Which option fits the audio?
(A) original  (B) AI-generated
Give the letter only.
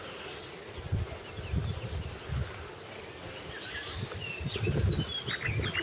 A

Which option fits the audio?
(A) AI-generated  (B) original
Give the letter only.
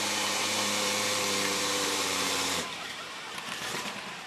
A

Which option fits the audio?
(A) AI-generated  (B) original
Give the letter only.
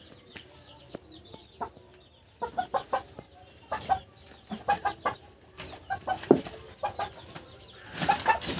B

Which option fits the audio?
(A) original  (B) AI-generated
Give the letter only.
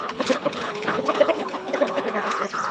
B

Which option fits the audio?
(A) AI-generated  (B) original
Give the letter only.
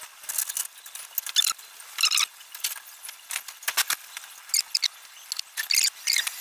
B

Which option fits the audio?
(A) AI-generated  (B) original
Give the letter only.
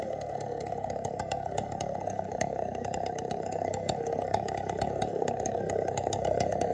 A